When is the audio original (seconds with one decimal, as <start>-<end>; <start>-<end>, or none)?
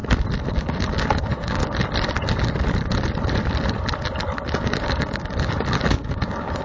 0.0-0.5; 1.6-4.6; 5.2-5.9